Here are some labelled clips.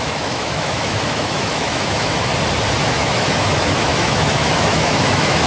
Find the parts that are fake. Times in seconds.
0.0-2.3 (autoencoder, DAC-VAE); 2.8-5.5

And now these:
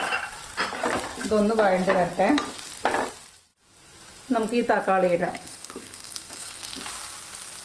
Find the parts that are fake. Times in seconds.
5.2-6.7 (codec, SNAC)

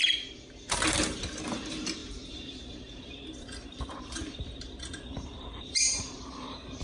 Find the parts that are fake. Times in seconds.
0.0-6.8 (vocoder, BigVGAN v2)

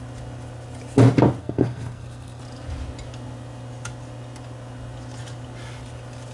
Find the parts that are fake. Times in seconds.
1.4-2.4 (codec, SNAC)

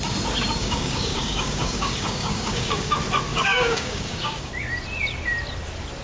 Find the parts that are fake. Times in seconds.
0.6-2.9 (codec, DAC); 3.3-4.5

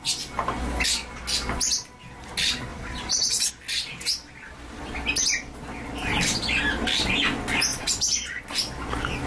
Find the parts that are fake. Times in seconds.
2.7-3.5 (vocoder, Vocos); 7.7-8.4

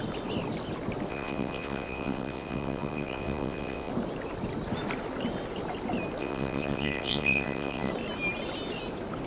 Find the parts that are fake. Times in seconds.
1.1-3.9 (vocoder, WaveNeXt); 6.2-7.9

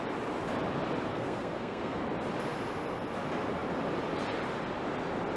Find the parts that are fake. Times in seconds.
1.1-2.0 (codec, SNAC)